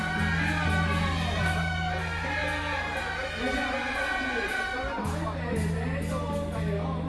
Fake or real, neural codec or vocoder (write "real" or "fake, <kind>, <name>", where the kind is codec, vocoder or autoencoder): real